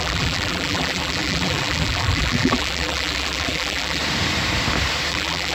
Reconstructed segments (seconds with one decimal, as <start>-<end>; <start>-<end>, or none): 0.0-4.0; 5.1-5.5